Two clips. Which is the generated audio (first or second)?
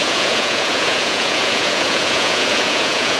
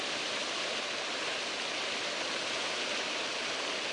first